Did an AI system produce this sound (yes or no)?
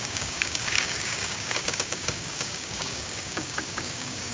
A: yes